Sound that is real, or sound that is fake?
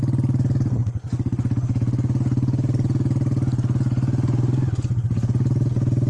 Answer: real